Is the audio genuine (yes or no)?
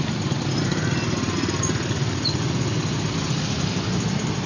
yes